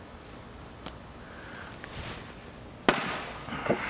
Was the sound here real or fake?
real